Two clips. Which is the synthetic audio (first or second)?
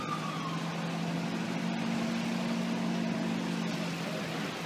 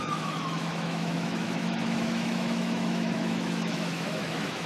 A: second